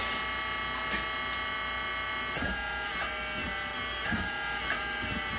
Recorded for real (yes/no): yes